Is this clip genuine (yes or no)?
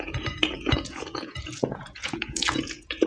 no